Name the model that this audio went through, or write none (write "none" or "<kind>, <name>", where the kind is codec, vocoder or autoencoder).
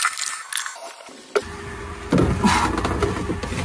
none